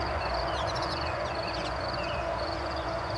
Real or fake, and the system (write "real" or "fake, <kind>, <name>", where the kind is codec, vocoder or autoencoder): fake, vocoder, Vocos